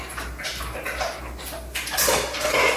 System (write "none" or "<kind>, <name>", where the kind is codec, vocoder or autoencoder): none